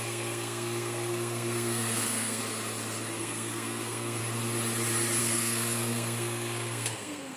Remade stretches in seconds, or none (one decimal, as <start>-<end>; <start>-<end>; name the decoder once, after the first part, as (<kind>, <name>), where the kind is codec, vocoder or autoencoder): 0.0-2.4 (codec, SNAC); 3.2-4.2; 5.2-7.4